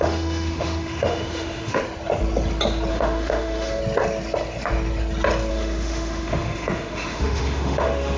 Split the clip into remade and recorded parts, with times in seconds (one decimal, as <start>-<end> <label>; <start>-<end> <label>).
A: 0.0-1.8 remade; 1.8-2.9 recorded; 2.9-3.8 remade; 3.8-5.5 recorded; 5.5-8.2 remade